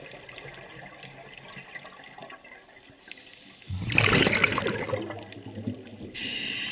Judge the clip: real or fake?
real